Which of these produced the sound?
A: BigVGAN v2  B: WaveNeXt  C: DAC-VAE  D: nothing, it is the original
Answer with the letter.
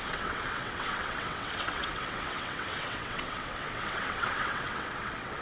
B